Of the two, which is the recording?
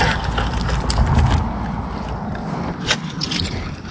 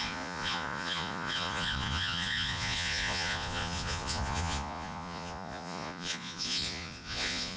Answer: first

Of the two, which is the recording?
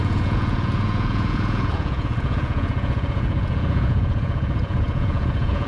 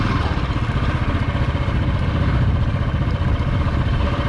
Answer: second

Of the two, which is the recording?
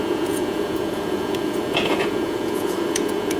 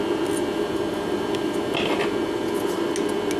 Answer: second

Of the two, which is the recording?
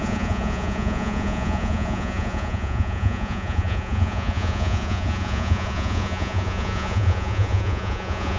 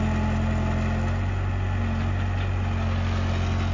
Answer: second